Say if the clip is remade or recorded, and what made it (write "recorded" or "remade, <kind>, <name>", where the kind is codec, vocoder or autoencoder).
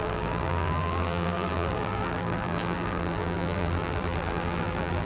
remade, vocoder, BigVGAN v2